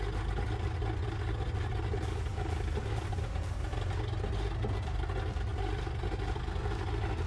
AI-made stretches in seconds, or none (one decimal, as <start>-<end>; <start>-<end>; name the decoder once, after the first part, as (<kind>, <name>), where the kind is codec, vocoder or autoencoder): none